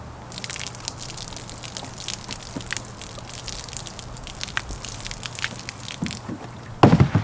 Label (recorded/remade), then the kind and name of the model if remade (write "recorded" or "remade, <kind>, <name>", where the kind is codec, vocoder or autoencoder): recorded